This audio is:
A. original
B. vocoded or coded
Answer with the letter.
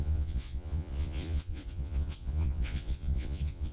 B